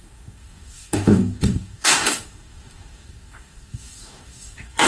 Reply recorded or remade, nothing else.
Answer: remade